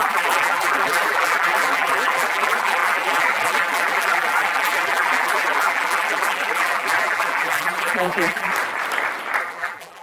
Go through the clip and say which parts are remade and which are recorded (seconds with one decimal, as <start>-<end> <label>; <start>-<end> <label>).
0.0-8.5 remade; 8.5-9.4 recorded; 9.4-10.0 remade